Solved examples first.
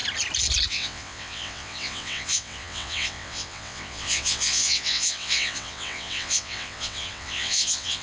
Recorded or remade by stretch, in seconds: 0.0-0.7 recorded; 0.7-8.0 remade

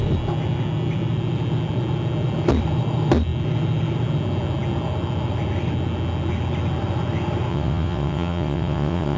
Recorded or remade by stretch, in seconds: 0.0-7.5 recorded; 7.5-9.2 remade

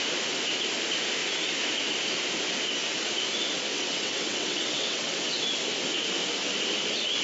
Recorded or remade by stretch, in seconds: 0.0-3.7 recorded; 3.7-5.5 remade; 5.5-7.2 recorded

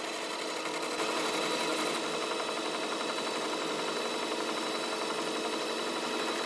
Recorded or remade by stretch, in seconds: 0.0-6.5 recorded

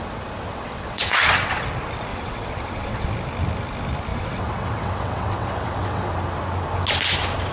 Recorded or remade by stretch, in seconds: 0.0-0.5 recorded; 0.5-1.6 remade; 1.6-2.1 recorded; 2.1-3.1 remade; 3.1-4.1 recorded; 4.1-6.1 remade; 6.1-7.5 recorded

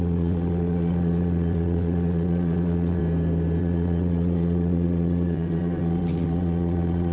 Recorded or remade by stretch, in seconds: 0.0-3.0 remade; 3.0-3.6 recorded; 3.6-7.1 remade